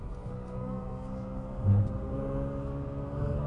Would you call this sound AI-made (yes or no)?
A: yes